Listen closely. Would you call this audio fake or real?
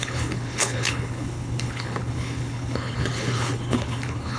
fake